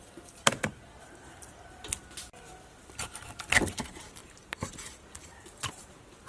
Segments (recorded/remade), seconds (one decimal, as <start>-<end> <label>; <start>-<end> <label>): 0.0-4.2 recorded; 4.2-5.7 remade; 5.7-6.3 recorded

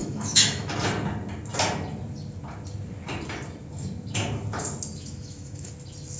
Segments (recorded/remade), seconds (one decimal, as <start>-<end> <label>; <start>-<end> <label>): 0.0-0.7 remade; 0.7-5.0 recorded; 5.0-5.7 remade; 5.7-6.2 recorded

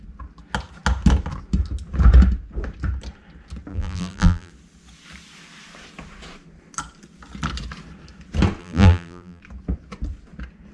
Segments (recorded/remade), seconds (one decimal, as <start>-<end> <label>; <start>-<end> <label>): 0.0-3.7 recorded; 3.7-4.5 remade; 4.5-8.6 recorded; 8.6-9.4 remade; 9.4-10.7 recorded

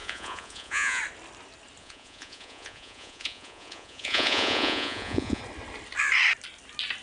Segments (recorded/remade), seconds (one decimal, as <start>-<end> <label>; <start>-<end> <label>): 0.0-1.0 remade; 1.0-1.8 recorded; 1.8-5.4 remade; 5.4-7.0 recorded

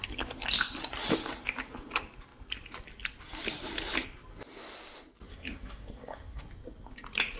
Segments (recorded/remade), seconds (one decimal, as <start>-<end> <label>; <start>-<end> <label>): 0.0-5.3 recorded; 5.3-6.4 remade; 6.4-7.4 recorded